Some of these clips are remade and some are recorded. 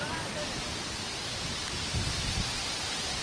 recorded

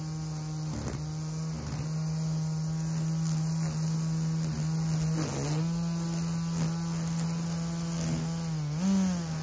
recorded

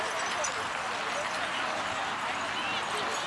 recorded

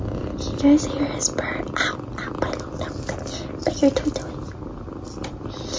recorded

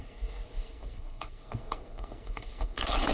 remade